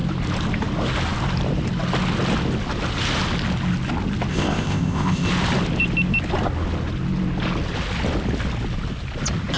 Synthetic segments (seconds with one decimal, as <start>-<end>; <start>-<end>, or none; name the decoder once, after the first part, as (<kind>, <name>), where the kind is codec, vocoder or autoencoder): 4.3-5.3 (codec, ZipCodec)